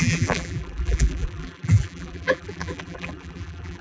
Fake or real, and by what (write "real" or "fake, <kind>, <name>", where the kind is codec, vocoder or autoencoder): fake, vocoder, BigVGAN v2